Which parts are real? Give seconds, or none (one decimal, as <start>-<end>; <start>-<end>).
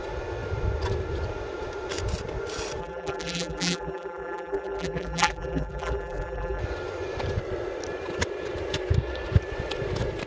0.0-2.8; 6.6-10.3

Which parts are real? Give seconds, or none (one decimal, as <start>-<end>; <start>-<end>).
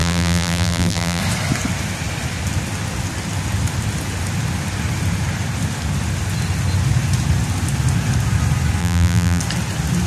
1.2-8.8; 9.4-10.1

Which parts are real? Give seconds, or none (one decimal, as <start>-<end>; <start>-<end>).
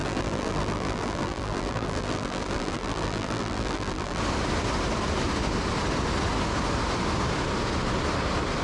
4.2-8.6